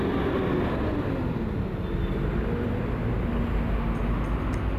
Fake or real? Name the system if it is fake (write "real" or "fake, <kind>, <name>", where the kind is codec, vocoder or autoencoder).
real